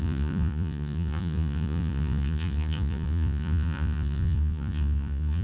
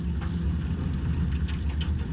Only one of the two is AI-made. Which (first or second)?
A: first